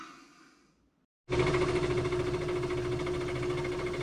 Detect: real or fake real